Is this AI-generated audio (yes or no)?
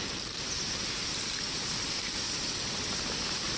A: no